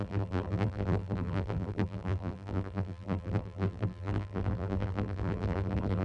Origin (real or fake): fake